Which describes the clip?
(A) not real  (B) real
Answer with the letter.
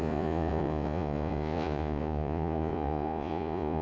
A